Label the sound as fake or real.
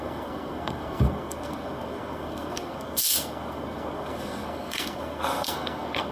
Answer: fake